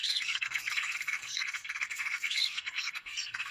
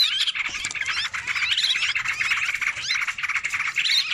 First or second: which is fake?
first